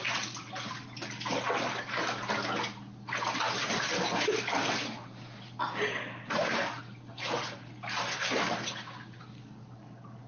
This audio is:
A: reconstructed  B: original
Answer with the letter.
B